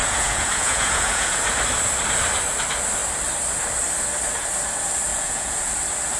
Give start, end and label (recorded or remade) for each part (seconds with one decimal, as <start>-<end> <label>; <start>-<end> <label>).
0.0-1.4 remade; 1.4-5.1 recorded; 5.1-5.7 remade; 5.7-6.2 recorded